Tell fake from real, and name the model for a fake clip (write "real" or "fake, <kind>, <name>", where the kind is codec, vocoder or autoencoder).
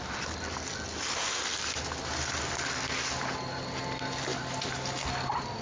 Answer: real